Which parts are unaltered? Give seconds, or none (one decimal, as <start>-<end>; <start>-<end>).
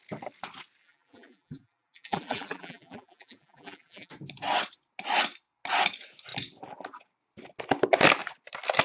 0.0-0.8; 4.1-8.8